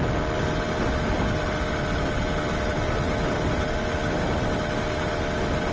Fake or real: real